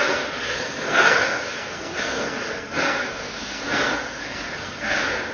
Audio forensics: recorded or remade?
remade